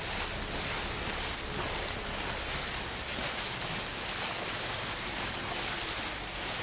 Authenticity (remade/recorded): recorded